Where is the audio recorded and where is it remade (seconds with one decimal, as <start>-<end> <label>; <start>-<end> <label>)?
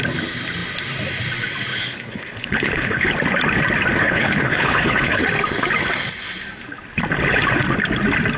0.0-1.7 recorded; 1.7-3.1 remade; 3.1-4.0 recorded; 4.0-5.2 remade; 5.2-8.4 recorded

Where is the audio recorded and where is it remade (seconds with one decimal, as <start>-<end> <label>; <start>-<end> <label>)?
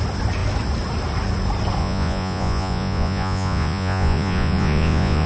0.0-1.8 recorded; 1.8-5.3 remade